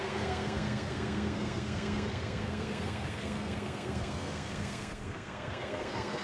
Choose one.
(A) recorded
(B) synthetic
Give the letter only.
B